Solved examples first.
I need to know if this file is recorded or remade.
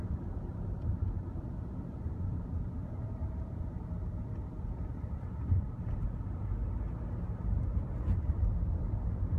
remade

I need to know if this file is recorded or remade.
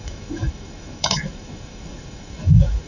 remade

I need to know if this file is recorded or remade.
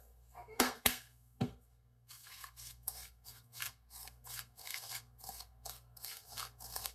remade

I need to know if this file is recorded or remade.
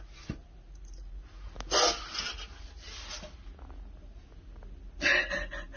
recorded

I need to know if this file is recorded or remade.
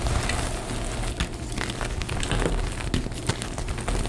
recorded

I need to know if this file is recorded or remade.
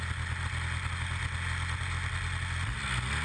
recorded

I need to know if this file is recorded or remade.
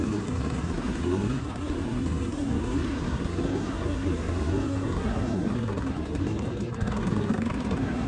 remade